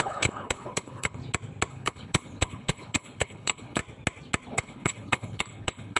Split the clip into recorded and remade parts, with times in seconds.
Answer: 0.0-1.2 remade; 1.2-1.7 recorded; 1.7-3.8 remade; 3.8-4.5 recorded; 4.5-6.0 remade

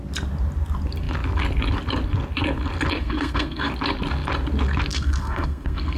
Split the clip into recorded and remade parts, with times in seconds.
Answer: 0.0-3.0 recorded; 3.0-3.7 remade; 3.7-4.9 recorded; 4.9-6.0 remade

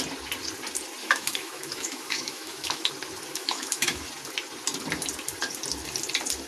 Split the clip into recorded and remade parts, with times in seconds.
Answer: 0.0-1.0 recorded; 1.0-2.9 remade; 2.9-3.3 recorded; 3.3-4.0 remade; 4.0-6.5 recorded